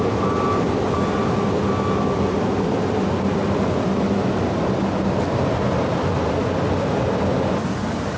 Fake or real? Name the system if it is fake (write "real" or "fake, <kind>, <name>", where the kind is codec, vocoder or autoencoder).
real